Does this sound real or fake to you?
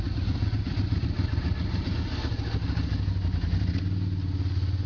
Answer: real